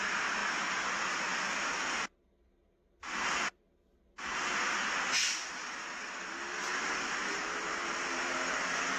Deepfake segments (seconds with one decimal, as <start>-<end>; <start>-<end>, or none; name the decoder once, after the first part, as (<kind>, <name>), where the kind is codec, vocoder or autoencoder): 7.2-8.2 (vocoder, BigVGAN v2)